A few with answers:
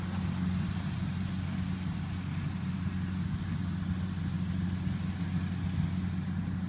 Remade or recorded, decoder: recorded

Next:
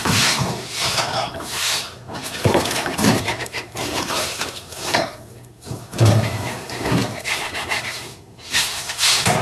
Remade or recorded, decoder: remade, codec, SNAC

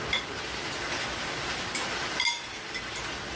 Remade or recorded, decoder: recorded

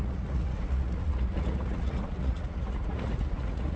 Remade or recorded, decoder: remade, vocoder, Vocos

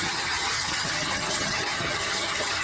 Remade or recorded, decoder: remade, vocoder, HiFi-GAN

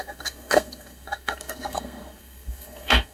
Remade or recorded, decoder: remade, codec, SNAC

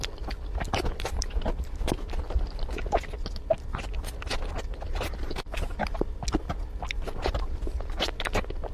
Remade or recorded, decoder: recorded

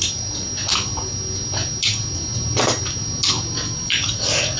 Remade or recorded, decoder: recorded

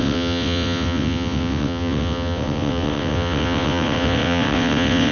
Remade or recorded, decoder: remade, vocoder, WaveNeXt